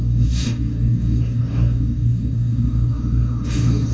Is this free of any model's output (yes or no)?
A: no